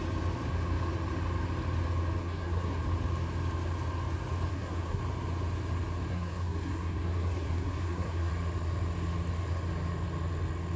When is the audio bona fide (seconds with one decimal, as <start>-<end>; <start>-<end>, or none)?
0.0-2.2; 2.8-4.5; 5.0-6.1; 8.3-10.8